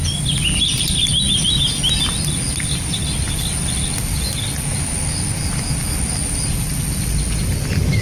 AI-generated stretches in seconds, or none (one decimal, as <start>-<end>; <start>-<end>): none